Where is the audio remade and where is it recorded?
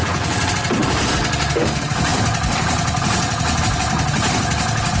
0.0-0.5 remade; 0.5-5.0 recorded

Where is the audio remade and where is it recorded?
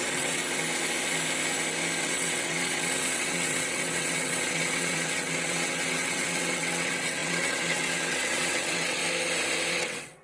0.0-0.4 remade; 0.4-2.0 recorded; 2.0-9.0 remade; 9.0-9.7 recorded; 9.7-10.2 remade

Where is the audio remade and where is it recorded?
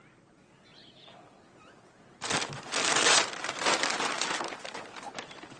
0.0-5.6 recorded